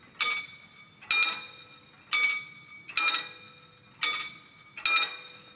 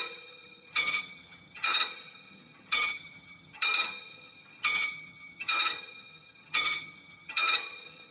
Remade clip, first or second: second